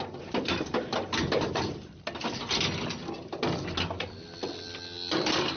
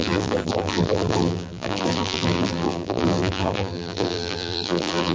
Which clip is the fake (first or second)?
second